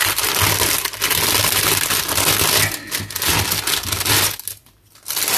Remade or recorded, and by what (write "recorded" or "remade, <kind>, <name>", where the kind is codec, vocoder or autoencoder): recorded